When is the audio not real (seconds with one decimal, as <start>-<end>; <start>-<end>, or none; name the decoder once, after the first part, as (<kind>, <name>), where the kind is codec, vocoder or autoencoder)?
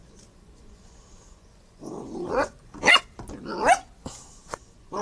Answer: 0.0-3.0 (vocoder, Vocos); 4.2-5.0